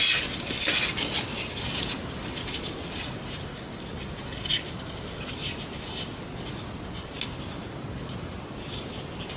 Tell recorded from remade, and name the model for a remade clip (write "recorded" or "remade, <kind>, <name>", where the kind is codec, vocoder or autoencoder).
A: recorded